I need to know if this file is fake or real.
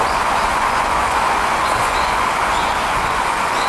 fake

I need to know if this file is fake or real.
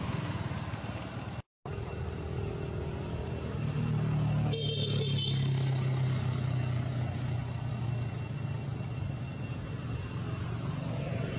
real